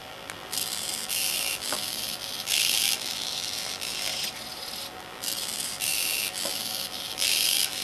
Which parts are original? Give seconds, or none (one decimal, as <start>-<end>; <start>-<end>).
4.1-4.9